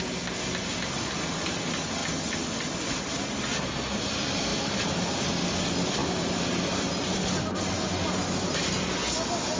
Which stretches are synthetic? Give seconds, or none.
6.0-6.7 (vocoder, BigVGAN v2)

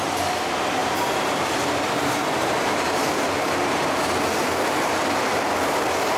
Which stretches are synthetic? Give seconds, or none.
0.8-4.2 (vocoder, BigVGAN v2)

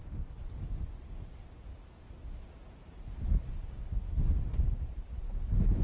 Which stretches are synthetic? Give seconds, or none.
2.6-5.8 (vocoder, BigVGAN v2)

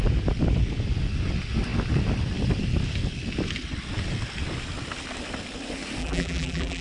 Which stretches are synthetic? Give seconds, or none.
6.0-6.8 (vocoder, BigVGAN v2)